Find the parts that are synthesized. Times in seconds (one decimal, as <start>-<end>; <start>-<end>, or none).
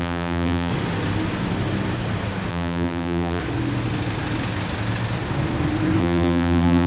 0.0-0.7; 2.5-3.4; 6.0-6.9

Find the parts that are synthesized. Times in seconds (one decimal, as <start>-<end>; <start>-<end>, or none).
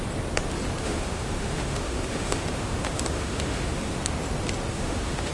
0.8-4.0; 4.7-5.3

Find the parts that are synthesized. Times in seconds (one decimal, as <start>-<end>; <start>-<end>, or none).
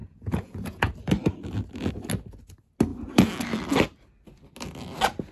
0.0-0.9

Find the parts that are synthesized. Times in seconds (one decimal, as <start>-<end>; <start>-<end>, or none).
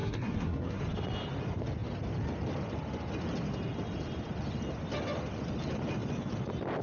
0.0-0.8